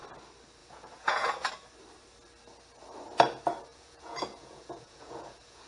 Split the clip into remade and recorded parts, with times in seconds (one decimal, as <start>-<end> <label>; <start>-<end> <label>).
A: 0.0-0.6 recorded; 0.6-1.5 remade; 1.5-3.7 recorded; 3.7-5.7 remade